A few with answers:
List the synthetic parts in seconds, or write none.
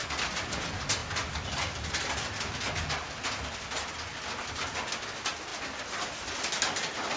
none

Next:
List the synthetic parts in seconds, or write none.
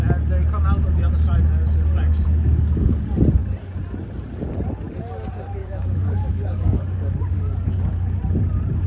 2.3-3.0 (codec, DAC); 5.6-8.2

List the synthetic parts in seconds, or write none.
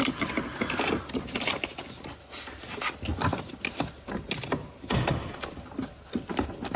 none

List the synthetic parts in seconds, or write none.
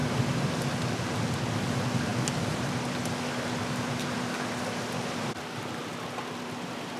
none